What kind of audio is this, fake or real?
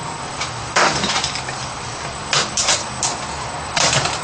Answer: real